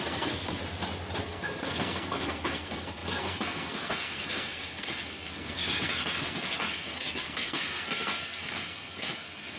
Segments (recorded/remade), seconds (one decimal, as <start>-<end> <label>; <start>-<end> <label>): 0.0-0.6 remade; 0.6-1.2 recorded; 1.2-9.6 remade